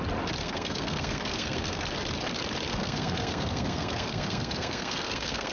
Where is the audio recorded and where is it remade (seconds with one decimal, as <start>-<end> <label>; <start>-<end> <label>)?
0.0-0.4 recorded; 0.4-1.8 remade; 1.8-2.7 recorded; 2.7-5.5 remade